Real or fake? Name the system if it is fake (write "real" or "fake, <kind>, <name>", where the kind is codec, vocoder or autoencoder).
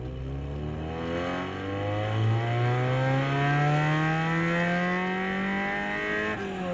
real